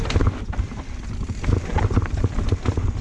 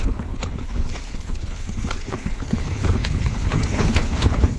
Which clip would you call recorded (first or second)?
first